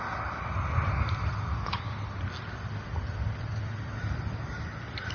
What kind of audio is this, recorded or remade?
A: recorded